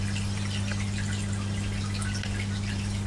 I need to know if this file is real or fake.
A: real